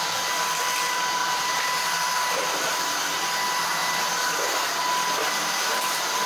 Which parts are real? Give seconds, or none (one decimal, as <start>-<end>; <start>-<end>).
0.0-1.2; 2.5-5.2